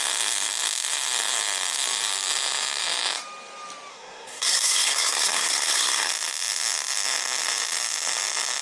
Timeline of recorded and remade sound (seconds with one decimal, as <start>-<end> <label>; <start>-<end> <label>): 0.0-3.9 recorded; 3.9-6.1 remade; 6.1-8.6 recorded